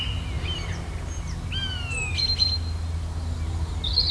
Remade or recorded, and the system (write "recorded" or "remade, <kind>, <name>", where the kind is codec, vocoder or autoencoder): recorded